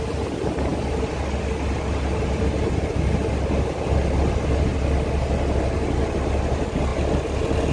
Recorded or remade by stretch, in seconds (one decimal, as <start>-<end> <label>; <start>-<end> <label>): 0.0-7.7 recorded